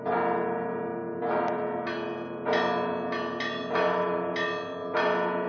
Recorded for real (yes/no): yes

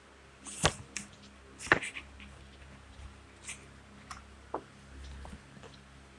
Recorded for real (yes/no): yes